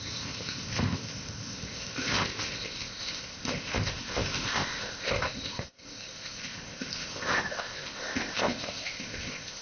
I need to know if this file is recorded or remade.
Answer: remade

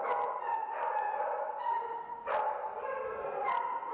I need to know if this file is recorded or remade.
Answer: recorded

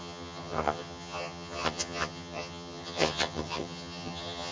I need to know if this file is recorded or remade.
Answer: remade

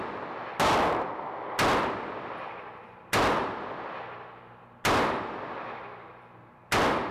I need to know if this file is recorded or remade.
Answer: recorded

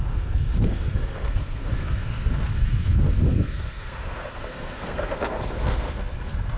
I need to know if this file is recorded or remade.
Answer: remade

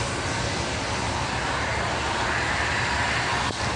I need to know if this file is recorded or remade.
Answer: recorded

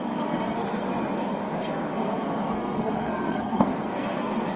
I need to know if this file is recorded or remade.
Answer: remade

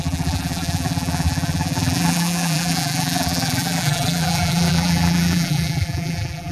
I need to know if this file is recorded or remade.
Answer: remade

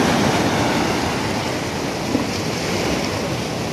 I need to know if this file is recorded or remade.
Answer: recorded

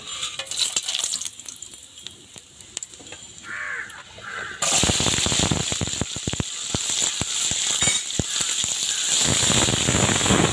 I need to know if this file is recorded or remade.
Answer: recorded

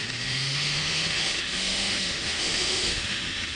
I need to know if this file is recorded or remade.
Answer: remade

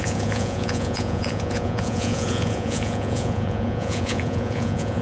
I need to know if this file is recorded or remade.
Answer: remade